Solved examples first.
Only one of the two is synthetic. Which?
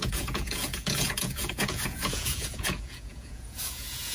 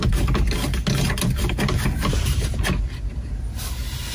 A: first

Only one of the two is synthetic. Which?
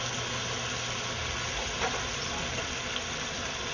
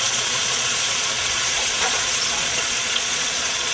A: second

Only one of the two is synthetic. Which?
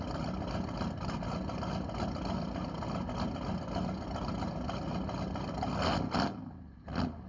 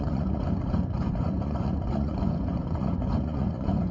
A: second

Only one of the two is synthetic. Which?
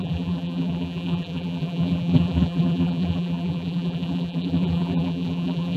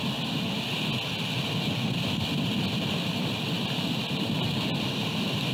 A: first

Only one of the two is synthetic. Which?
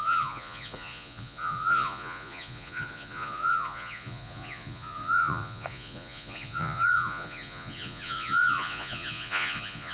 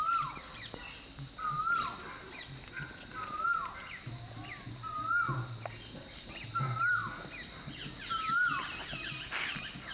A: first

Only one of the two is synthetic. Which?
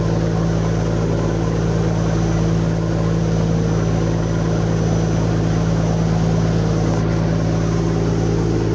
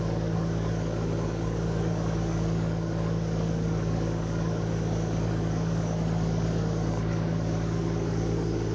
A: second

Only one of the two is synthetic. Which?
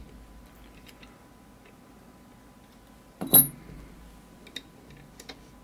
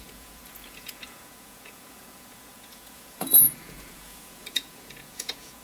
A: second